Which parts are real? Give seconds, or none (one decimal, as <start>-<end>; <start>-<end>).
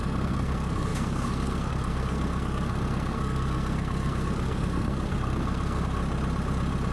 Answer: 6.0-6.9